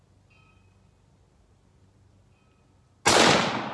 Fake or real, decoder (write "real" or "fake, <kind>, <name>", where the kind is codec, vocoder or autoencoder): real